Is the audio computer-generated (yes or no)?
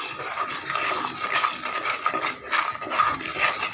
no